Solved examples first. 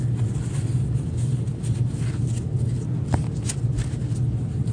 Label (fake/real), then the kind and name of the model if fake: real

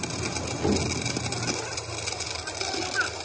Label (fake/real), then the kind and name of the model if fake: real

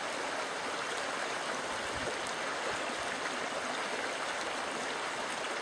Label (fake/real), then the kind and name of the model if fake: real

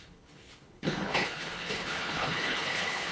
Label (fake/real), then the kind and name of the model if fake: fake, codec, HILCodec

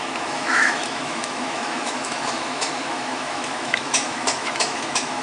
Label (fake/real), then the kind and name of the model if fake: fake, autoencoder, DAC-VAE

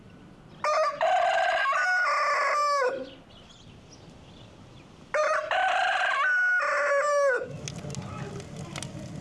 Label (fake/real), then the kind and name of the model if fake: real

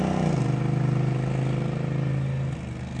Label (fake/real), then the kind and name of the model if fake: real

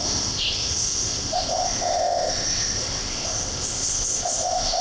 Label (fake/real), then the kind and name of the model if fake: fake, codec, ZipCodec